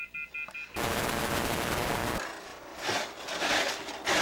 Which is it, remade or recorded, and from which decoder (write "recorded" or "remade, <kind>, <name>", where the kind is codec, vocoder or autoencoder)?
recorded